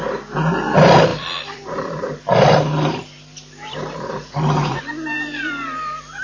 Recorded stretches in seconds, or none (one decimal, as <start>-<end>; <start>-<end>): 0.0-1.1; 4.8-5.3